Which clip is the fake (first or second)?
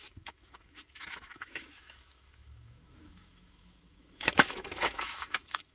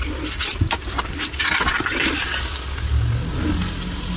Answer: first